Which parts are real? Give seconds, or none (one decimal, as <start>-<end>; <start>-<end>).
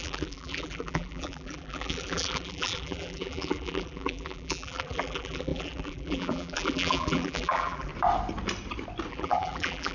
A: 7.9-9.1